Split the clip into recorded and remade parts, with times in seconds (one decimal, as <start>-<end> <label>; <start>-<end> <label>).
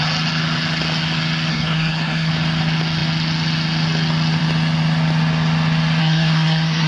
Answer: 0.0-1.5 recorded; 1.5-2.3 remade; 2.3-6.0 recorded; 6.0-6.9 remade